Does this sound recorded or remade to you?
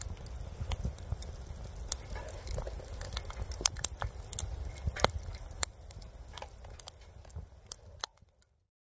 recorded